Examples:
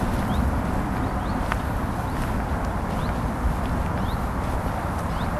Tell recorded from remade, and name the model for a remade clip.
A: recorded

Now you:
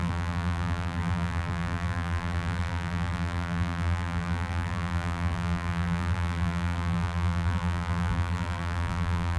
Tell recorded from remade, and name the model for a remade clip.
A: remade, vocoder, BigVGAN v2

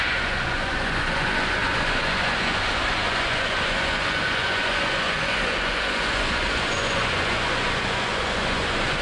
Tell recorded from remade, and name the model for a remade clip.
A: remade, vocoder, Vocos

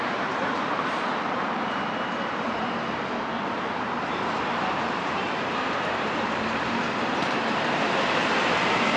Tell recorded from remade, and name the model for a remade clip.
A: remade, vocoder, BigVGAN v2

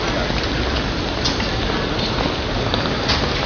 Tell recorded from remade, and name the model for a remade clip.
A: recorded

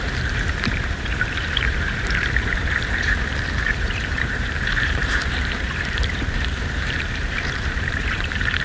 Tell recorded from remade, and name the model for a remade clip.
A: remade, vocoder, BigVGAN v2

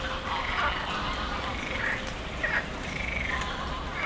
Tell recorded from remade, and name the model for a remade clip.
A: recorded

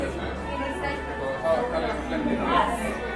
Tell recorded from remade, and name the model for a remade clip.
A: recorded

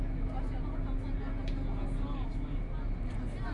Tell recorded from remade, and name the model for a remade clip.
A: recorded